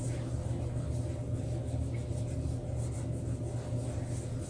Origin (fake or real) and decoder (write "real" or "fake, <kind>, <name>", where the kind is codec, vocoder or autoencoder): real